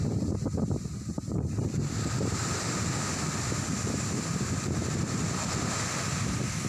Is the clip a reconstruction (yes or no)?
no